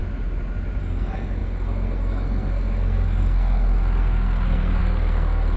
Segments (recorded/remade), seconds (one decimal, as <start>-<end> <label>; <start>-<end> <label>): 0.0-0.8 recorded; 0.8-5.6 remade

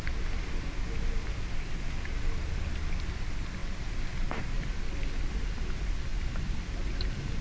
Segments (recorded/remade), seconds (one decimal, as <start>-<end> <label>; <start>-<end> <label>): 0.0-7.4 recorded

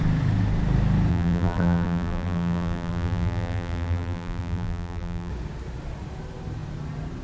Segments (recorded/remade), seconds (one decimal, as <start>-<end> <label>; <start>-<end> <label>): 0.0-1.1 recorded; 1.1-5.3 remade; 5.3-7.2 recorded

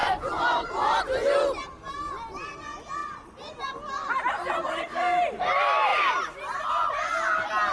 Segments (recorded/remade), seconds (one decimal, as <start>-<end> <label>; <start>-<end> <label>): 0.0-1.0 remade; 1.0-7.7 recorded